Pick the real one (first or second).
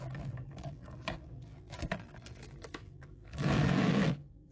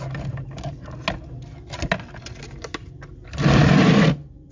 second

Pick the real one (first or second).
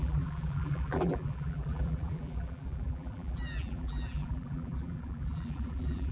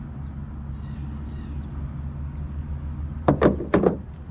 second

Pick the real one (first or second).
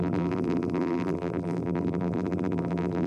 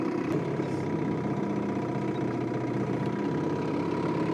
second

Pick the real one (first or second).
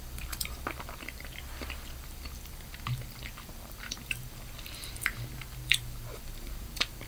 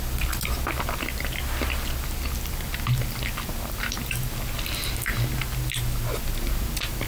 second